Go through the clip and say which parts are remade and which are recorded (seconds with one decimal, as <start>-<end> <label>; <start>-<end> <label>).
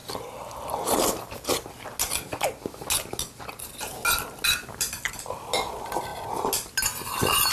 0.0-1.7 remade; 1.7-7.5 recorded